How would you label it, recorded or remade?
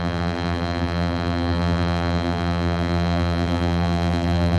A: remade